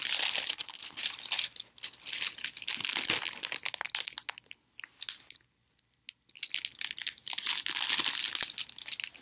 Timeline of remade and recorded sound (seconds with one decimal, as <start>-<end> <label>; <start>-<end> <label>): 0.0-0.5 recorded; 0.5-1.0 remade; 1.0-9.2 recorded